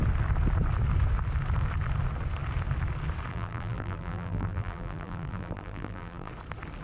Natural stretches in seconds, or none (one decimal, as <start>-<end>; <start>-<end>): 0.0-3.3; 6.3-6.8